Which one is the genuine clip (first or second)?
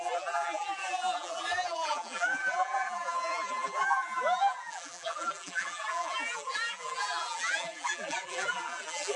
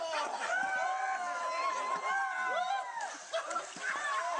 second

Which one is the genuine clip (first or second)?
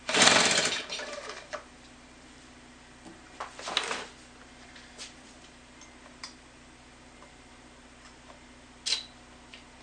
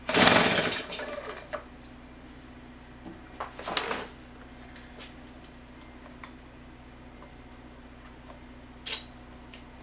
second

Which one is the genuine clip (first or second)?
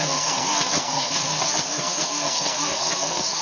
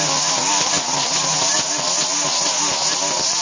second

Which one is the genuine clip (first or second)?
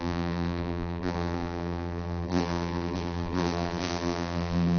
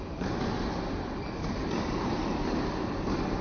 second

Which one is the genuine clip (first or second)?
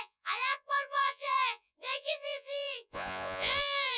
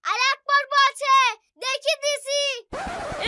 second